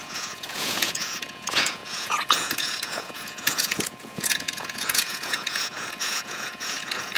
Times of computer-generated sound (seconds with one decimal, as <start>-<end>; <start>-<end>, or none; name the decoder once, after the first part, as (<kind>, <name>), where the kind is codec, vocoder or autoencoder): 0.0-7.2 (vocoder, Vocos)